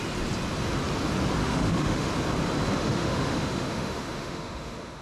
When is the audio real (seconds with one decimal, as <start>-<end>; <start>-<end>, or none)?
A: 0.0-1.4; 2.1-2.8